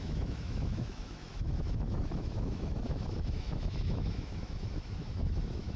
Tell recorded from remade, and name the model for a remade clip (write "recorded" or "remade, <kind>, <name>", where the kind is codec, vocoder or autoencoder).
remade, autoencoder, DAC-VAE